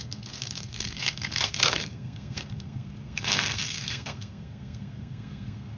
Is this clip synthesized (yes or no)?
yes